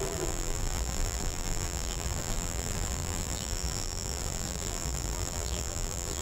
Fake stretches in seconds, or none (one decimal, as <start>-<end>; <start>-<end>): 0.0-6.2